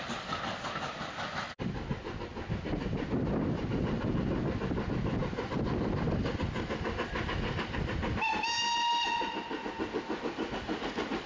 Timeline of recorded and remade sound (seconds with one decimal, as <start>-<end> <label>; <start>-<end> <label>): 0.0-11.3 recorded